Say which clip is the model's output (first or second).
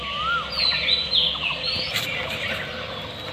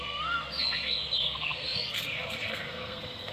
second